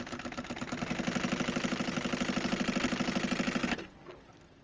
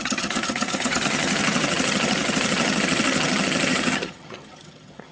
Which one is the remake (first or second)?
second